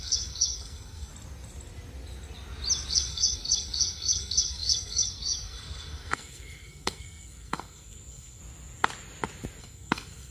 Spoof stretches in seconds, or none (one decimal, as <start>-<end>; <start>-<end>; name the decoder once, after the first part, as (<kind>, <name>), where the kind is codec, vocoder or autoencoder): 0.0-1.1 (codec, SNAC); 2.9-8.4; 9.6-10.3